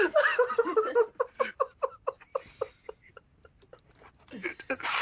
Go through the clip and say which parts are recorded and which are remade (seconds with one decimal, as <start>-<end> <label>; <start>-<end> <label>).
0.0-5.0 recorded